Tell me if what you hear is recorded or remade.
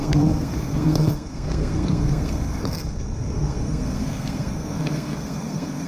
remade